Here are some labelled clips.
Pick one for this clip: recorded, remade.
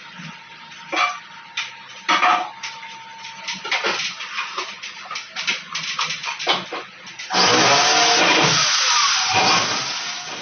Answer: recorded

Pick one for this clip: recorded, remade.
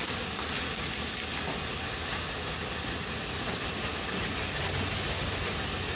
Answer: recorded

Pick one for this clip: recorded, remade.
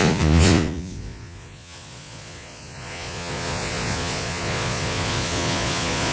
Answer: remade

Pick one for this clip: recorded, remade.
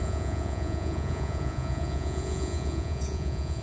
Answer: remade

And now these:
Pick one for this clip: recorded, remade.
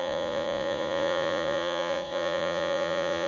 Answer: remade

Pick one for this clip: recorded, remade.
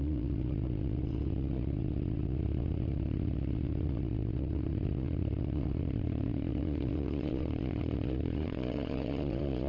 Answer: remade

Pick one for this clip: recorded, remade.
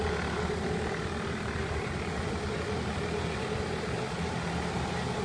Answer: recorded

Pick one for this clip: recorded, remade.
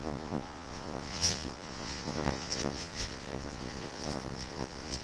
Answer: remade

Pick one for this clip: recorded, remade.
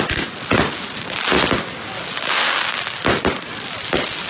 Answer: recorded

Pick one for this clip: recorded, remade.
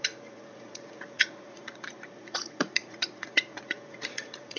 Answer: remade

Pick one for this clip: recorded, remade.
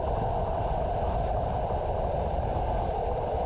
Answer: recorded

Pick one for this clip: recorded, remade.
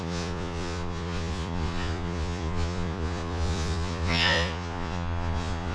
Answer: remade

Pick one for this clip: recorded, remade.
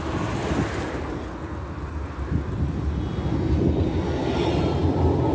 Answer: recorded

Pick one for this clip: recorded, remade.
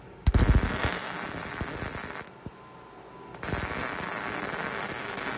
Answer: recorded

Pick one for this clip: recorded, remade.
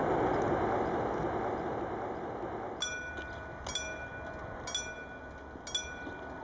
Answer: recorded